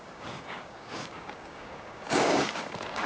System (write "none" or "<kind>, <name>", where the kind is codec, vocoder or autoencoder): codec, DAC